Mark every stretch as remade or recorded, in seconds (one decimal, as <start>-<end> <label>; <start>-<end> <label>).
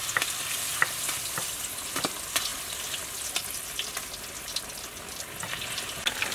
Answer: 0.0-6.3 recorded